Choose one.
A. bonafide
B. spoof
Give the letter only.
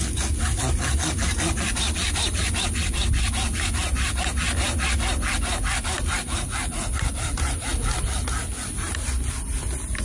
A